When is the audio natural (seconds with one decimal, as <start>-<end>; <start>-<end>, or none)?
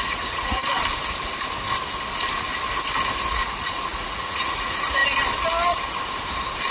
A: 0.6-3.3; 5.0-6.7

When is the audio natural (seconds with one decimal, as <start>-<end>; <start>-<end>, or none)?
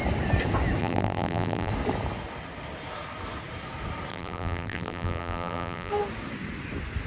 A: 0.0-0.8; 1.7-4.1; 5.9-7.1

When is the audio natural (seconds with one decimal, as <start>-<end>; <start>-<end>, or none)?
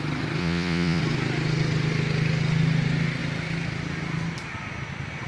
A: 0.0-0.4; 1.0-5.3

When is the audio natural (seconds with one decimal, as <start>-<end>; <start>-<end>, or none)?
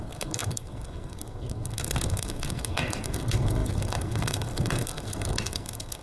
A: none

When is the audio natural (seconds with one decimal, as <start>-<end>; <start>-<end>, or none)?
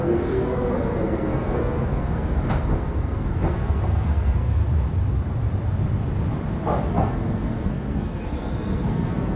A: 4.6-6.9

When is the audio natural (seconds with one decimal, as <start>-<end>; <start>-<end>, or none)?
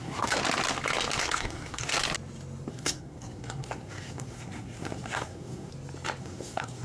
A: 0.4-1.2; 1.9-2.7; 5.7-6.2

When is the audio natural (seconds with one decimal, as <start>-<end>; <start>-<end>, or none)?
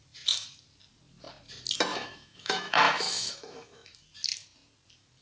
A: 0.0-1.9; 3.9-5.2